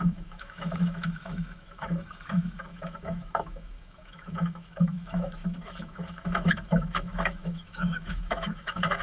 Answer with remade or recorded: remade